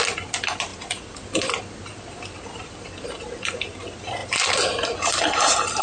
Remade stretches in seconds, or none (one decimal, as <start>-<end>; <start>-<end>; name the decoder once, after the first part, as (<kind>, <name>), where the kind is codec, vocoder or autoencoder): none